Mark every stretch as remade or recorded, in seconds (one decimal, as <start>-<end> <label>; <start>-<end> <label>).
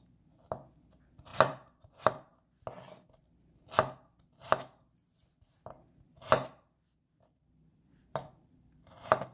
0.0-2.3 remade; 2.3-7.4 recorded; 7.4-9.3 remade